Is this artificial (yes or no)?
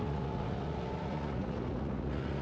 yes